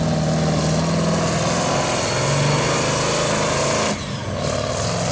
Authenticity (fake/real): real